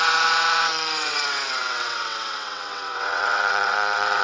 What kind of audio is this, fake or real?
fake